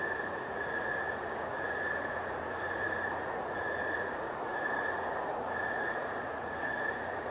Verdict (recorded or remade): remade